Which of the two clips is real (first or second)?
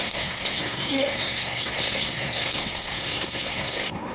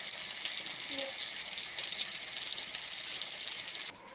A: second